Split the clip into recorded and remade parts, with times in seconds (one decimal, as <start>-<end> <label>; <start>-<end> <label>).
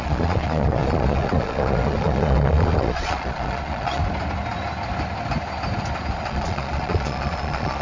0.0-4.0 remade; 4.0-6.2 recorded; 6.2-7.8 remade